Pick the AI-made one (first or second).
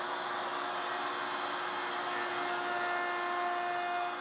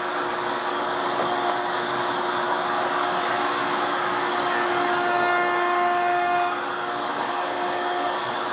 second